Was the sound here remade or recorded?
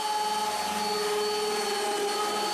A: recorded